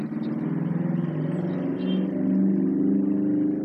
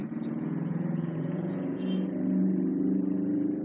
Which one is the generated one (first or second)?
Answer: second